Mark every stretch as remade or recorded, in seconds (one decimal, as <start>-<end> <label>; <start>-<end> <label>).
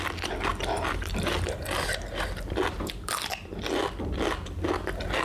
0.0-5.2 recorded